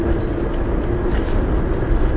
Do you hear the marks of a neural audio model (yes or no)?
no